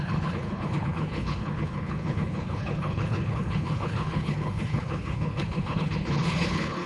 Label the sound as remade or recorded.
remade